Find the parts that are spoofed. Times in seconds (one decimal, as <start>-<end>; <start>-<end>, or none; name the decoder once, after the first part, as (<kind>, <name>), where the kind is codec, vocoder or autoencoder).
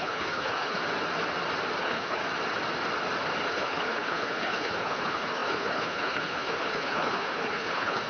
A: 0.0-0.8 (codec, HILCodec); 1.8-2.2; 3.5-8.1